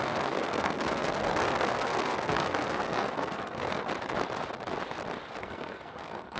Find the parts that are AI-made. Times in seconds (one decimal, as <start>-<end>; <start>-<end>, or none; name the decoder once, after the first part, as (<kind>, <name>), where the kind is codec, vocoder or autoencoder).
0.0-3.9 (codec, SNAC); 5.4-6.4